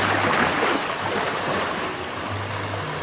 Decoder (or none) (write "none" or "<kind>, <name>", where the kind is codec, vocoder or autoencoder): none